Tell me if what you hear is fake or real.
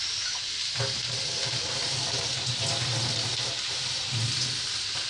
real